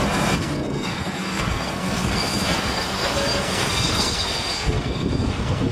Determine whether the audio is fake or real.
fake